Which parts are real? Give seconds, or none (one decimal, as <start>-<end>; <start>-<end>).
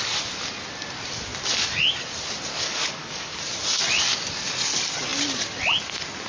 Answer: 0.0-2.5; 3.4-6.3